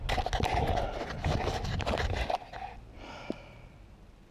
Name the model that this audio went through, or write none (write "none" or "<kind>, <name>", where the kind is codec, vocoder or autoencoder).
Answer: none